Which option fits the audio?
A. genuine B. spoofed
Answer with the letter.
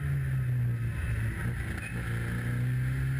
A